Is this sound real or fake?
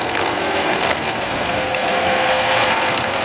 fake